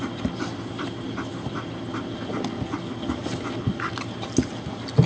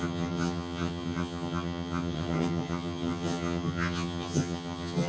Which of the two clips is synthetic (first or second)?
second